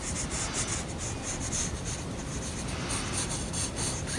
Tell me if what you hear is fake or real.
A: real